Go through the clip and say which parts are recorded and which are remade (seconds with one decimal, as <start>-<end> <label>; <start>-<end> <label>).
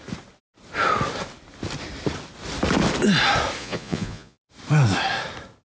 0.0-3.6 recorded; 3.6-4.5 remade; 4.5-5.7 recorded